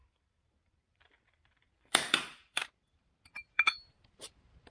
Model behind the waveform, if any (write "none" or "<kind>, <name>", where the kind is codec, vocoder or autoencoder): vocoder, BigVGAN v2